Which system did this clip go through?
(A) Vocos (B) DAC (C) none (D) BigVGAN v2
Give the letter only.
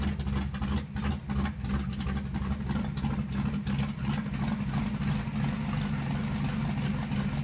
C